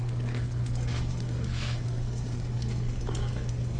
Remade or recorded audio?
remade